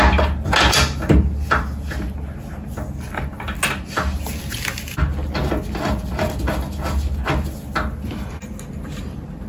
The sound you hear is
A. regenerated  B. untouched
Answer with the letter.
B